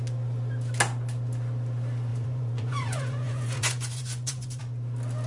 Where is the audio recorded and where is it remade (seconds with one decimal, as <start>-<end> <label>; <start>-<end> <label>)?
0.0-2.1 recorded; 2.1-4.6 remade; 4.6-5.3 recorded